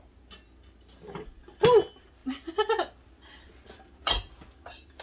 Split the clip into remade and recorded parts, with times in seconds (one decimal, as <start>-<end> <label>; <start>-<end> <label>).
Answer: 0.0-5.0 recorded